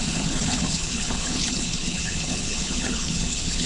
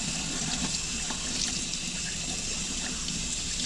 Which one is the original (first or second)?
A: second